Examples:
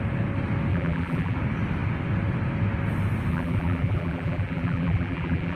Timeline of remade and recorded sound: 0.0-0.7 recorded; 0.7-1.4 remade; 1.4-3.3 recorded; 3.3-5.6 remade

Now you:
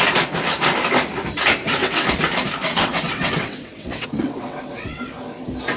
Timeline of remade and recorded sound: 0.0-1.6 recorded; 1.6-2.2 remade; 2.2-2.7 recorded; 2.7-5.0 remade; 5.0-5.8 recorded

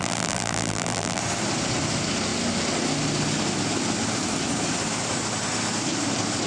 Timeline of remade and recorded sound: 0.0-1.2 remade; 1.2-6.5 recorded

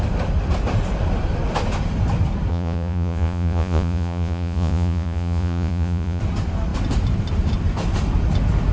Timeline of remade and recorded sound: 0.0-2.5 recorded; 2.5-6.2 remade; 6.2-8.7 recorded